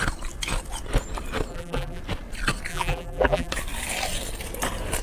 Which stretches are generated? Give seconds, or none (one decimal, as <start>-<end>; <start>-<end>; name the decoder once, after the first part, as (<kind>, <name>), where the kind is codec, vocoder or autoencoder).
1.5-2.0 (vocoder, BigVGAN v2); 2.7-3.5